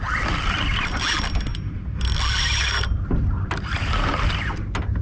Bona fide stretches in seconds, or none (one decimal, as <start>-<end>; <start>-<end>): 0.0-5.0